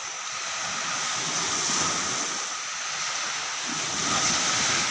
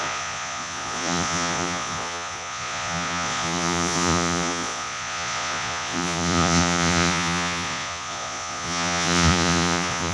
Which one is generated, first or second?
second